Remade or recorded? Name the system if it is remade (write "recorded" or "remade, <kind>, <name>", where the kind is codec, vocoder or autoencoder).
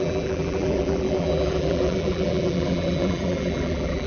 remade, vocoder, BigVGAN v2